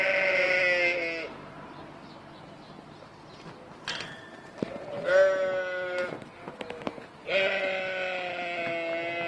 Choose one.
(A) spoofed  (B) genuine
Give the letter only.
B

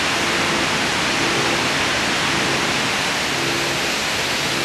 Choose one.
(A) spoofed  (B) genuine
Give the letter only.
B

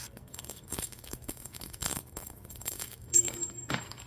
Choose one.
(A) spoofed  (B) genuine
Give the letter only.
A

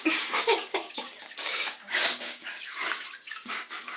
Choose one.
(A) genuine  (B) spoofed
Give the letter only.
B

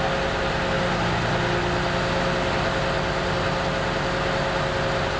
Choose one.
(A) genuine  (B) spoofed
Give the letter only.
A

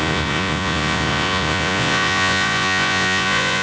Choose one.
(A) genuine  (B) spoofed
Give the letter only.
B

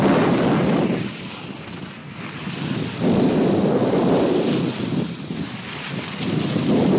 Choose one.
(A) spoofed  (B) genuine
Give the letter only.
B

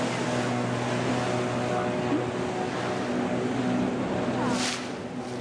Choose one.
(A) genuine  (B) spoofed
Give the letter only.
A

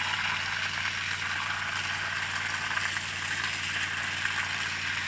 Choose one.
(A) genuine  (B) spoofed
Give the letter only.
A